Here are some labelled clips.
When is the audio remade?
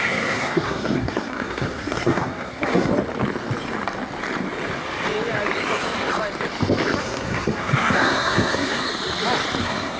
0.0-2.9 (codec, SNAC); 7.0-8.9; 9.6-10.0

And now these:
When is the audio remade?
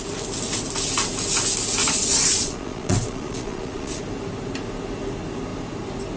1.8-4.0 (vocoder, Vocos)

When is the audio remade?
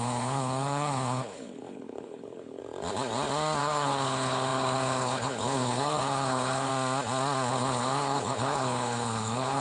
0.0-2.6 (codec, HILCodec); 3.6-6.7; 7.5-9.6